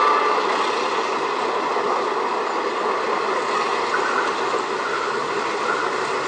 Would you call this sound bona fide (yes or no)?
yes